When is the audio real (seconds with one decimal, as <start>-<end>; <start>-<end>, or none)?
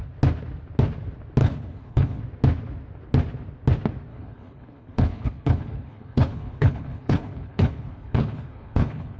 0.0-1.4; 2.2-4.1